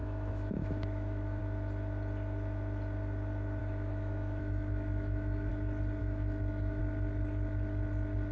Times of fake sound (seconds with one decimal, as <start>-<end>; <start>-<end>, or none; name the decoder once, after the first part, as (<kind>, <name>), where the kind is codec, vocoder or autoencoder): 0.0-1.4 (autoencoder, DAC-VAE); 3.6-5.5; 6.0-6.8